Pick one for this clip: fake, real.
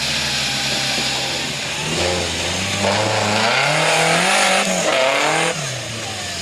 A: real